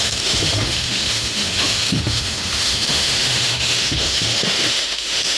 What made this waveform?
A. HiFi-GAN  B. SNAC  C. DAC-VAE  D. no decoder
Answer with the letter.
C